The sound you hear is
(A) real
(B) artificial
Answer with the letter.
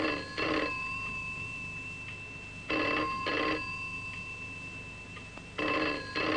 A